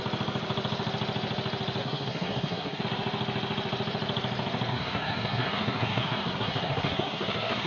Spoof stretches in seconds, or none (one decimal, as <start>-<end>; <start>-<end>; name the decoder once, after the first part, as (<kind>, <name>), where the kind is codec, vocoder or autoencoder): 1.8-2.8 (codec, SNAC); 4.7-7.7